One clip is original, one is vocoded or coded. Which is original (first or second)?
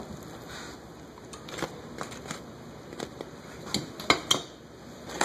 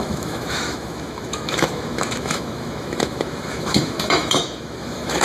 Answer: first